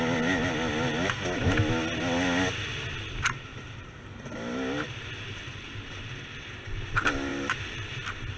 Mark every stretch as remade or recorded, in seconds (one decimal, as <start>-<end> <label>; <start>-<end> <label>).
0.0-3.5 recorded; 3.5-4.2 remade; 4.2-7.3 recorded; 7.3-8.4 remade